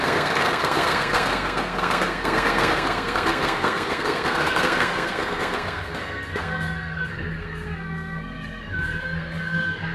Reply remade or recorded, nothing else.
remade